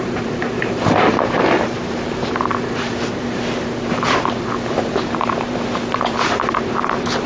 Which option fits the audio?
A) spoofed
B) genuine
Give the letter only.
A